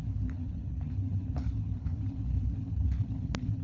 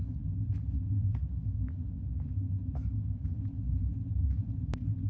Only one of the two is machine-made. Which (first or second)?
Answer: first